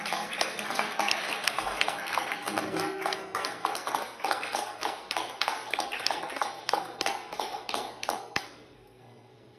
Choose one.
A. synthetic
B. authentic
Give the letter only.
A